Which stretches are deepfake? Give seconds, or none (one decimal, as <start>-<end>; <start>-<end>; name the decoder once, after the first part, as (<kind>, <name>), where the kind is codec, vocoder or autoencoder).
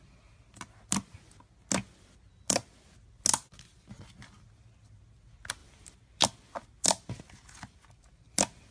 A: 5.6-7.2 (vocoder, BigVGAN v2)